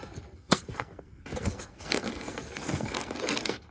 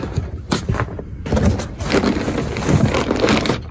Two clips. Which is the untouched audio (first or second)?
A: second